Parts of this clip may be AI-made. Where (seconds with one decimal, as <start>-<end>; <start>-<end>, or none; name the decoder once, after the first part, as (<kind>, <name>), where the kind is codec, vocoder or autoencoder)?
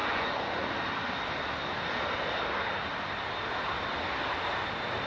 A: 0.0-0.7 (vocoder, Vocos)